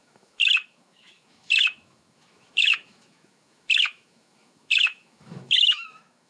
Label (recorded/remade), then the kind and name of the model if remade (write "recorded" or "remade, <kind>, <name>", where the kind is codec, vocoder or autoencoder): remade, autoencoder, DAC-VAE